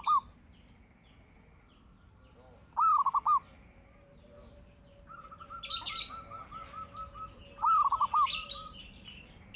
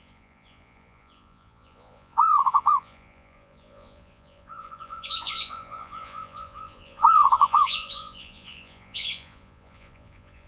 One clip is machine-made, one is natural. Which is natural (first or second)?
first